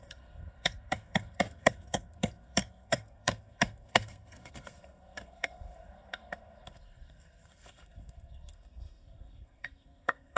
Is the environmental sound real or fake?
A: fake